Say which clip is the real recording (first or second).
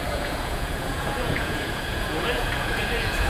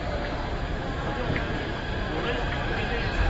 second